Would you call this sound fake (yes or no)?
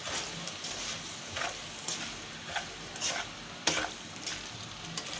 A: no